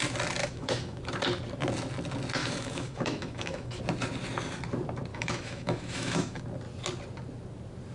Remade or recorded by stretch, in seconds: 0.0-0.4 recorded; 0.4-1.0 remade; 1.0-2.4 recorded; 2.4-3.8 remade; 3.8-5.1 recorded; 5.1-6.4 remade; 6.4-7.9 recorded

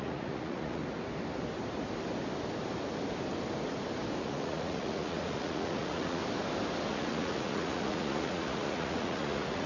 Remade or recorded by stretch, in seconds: 0.0-0.8 remade; 0.8-4.2 recorded; 4.2-6.2 remade; 6.2-6.9 recorded; 6.9-9.7 remade

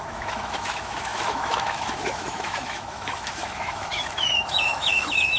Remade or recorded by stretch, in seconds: 0.0-5.4 remade

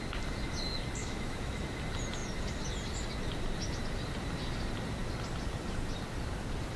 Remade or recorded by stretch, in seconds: 0.0-1.0 recorded; 1.0-1.6 remade; 1.6-6.8 recorded

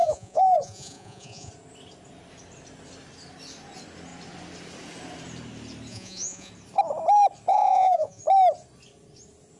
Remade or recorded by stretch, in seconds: 0.0-1.5 remade; 1.5-5.9 recorded; 5.9-6.5 remade; 6.5-7.5 recorded; 7.5-8.2 remade; 8.2-9.6 recorded